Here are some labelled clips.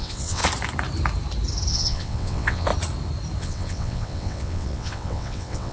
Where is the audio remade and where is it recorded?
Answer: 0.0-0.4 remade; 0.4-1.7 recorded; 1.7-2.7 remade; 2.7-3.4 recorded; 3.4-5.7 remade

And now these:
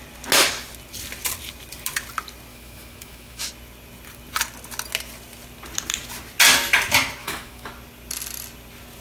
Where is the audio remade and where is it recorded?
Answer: 0.0-2.5 recorded; 2.5-3.5 remade; 3.5-7.2 recorded; 7.2-7.7 remade; 7.7-9.0 recorded

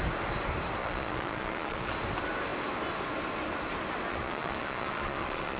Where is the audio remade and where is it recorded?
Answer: 0.0-0.8 recorded; 0.8-1.9 remade; 1.9-4.1 recorded; 4.1-5.6 remade

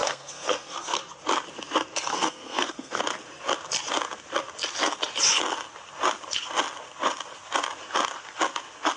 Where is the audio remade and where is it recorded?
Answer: 0.0-1.0 remade; 1.0-2.1 recorded; 2.1-3.0 remade; 3.0-9.0 recorded

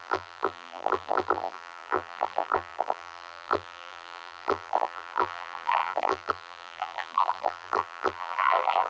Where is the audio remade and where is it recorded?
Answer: 0.0-8.9 remade

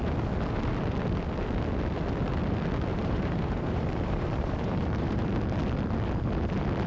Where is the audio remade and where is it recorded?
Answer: 0.0-2.9 recorded; 2.9-5.3 remade; 5.3-6.9 recorded